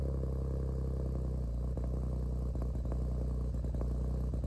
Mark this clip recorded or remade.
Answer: recorded